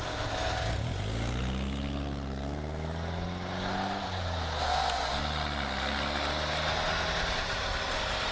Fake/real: real